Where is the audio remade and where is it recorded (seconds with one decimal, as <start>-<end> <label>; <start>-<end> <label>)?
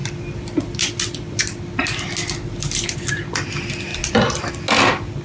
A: 0.0-3.9 recorded; 3.9-4.5 remade; 4.5-5.2 recorded